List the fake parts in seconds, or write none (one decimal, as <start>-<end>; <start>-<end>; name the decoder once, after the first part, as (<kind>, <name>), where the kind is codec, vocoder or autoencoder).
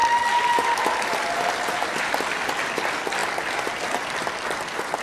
none